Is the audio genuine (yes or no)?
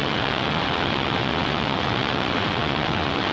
no